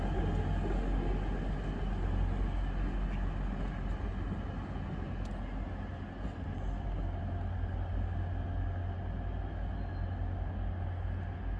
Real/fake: real